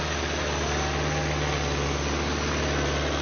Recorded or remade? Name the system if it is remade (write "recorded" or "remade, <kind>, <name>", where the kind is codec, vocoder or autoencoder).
recorded